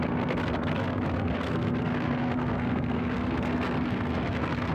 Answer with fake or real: fake